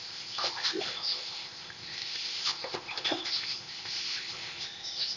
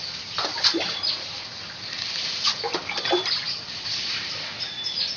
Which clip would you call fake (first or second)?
first